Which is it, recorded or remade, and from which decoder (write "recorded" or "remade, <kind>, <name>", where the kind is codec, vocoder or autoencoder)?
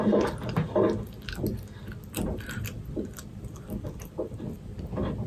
recorded